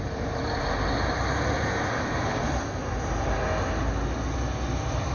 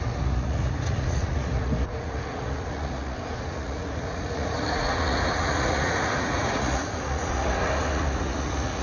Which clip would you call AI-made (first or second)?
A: second